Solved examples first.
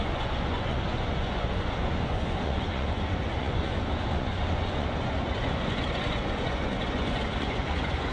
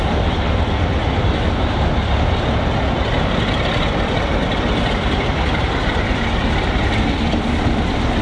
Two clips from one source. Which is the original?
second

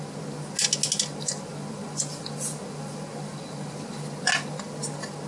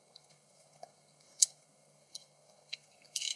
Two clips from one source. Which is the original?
first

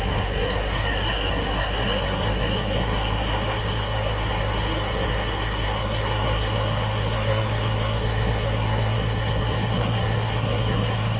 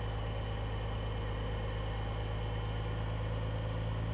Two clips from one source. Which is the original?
second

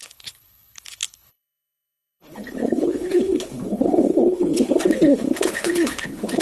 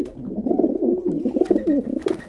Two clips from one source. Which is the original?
second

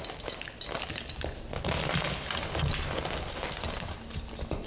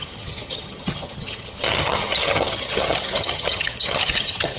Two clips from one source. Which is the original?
first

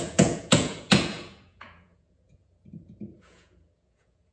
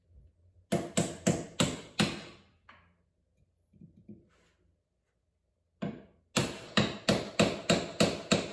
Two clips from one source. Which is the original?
second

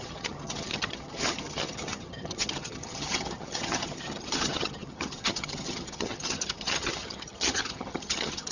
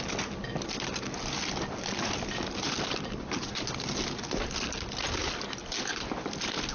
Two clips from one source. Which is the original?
second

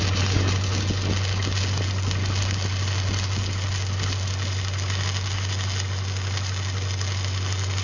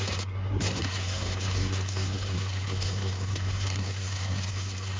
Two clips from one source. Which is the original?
first